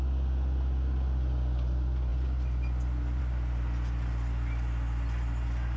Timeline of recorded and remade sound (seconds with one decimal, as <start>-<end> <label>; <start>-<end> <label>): 0.0-5.8 recorded